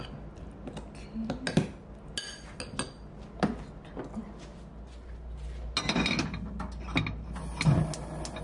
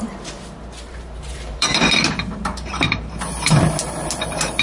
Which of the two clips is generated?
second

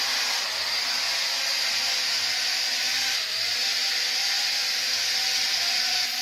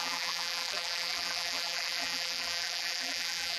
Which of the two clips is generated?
second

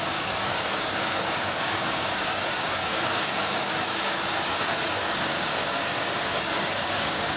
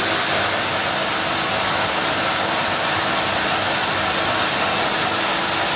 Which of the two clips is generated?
first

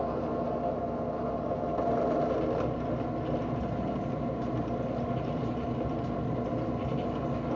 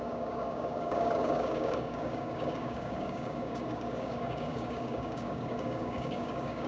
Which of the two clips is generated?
second